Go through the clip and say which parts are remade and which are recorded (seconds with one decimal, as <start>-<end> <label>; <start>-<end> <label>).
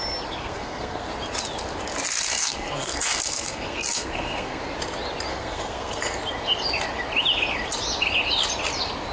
0.0-0.4 recorded; 0.4-1.1 remade; 1.1-2.3 recorded; 2.3-4.6 remade; 4.6-5.3 recorded; 5.3-6.1 remade; 6.1-9.1 recorded